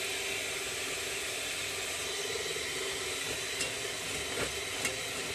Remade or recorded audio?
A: recorded